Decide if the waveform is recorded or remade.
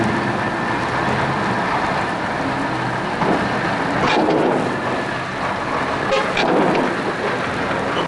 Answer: recorded